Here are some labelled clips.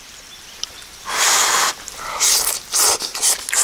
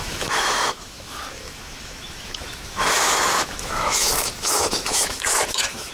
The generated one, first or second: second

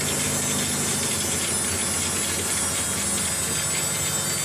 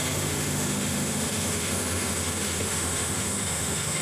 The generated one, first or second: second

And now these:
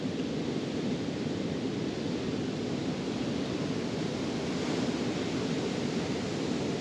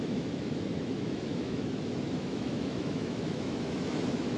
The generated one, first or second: second